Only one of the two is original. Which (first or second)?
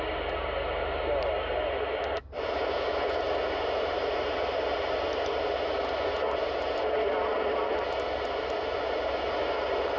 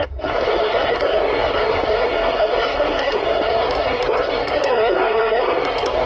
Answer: first